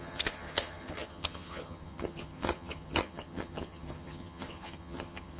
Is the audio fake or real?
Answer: fake